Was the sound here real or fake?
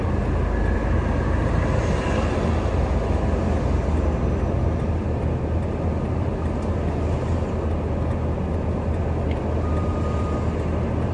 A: real